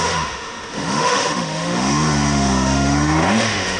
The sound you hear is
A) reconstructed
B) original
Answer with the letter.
A